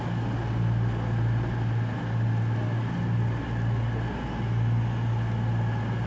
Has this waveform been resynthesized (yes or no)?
no